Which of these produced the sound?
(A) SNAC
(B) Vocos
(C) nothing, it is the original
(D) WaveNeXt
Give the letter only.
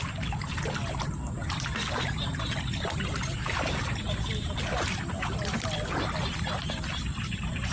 C